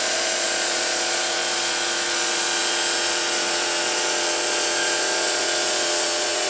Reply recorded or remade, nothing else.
remade